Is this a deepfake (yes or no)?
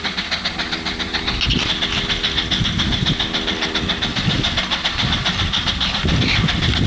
no